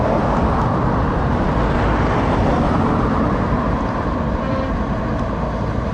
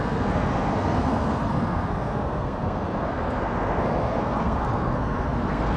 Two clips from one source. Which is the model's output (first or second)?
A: second